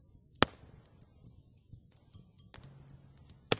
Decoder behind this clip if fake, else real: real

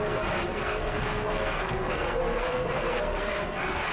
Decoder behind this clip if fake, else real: fake, codec, SNAC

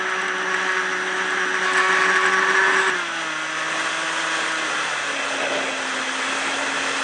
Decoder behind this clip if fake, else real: real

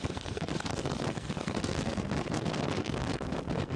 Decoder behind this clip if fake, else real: fake, codec, SNAC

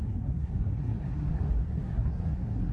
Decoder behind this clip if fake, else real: fake, codec, SNAC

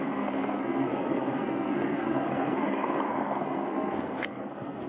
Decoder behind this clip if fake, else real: fake, codec, SNAC